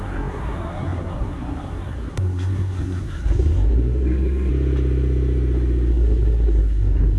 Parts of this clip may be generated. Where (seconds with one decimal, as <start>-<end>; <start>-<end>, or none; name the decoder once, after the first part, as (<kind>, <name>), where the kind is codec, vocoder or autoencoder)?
0.0-4.5 (codec, SNAC); 5.9-7.2